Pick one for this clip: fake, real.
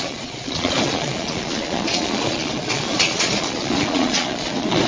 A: fake